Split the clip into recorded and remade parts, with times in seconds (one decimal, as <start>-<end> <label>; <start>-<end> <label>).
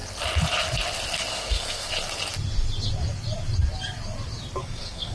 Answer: 0.0-1.3 recorded; 1.3-1.9 remade; 1.9-4.6 recorded; 4.6-5.1 remade